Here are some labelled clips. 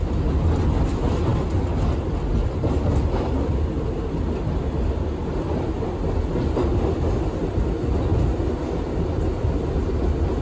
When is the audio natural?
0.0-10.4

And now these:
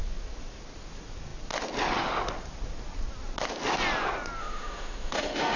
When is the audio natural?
0.0-4.4

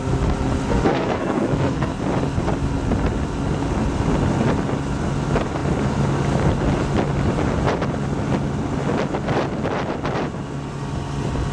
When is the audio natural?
0.0-0.7; 1.9-11.5

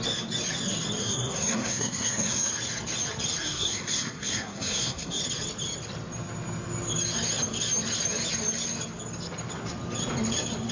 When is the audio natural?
0.0-1.0; 2.5-3.4; 5.2-10.7

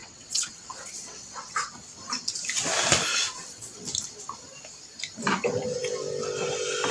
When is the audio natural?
1.7-3.1; 3.8-6.9

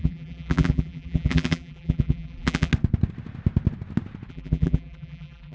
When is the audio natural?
2.7-4.3